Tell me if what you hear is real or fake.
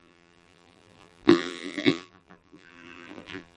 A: fake